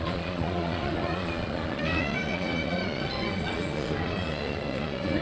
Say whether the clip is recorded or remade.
remade